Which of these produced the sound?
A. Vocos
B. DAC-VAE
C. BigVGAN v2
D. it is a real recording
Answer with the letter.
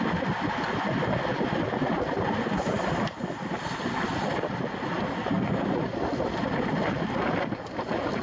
D